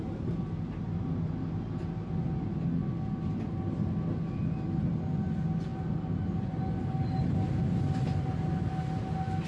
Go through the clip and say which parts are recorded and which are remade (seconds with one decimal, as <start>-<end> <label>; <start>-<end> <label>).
0.0-9.5 recorded